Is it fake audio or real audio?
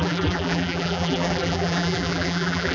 fake